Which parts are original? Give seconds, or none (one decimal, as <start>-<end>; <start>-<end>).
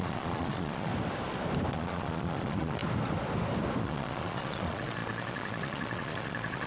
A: 0.9-1.7; 2.8-3.8